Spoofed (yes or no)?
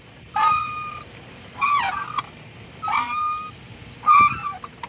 no